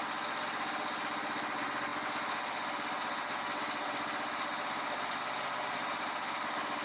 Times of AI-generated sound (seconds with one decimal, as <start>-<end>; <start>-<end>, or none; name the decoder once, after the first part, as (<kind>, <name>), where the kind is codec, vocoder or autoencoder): none